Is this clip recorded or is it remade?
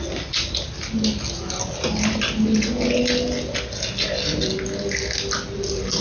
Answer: recorded